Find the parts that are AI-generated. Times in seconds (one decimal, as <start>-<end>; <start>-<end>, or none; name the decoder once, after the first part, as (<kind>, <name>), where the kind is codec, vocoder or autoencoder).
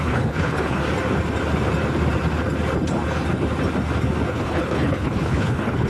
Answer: 0.0-0.8 (codec, HILCodec); 4.3-5.9